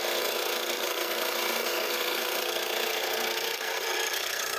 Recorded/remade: remade